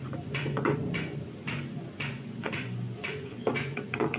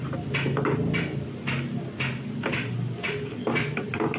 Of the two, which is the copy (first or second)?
first